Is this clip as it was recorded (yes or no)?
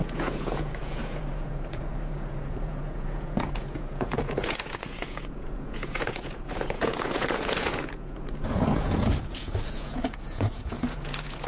no